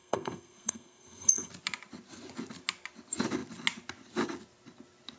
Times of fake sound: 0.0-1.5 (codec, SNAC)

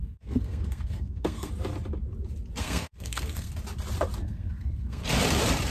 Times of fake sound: 0.0-1.5 (codec, SNAC); 2.6-3.5; 4.2-5.0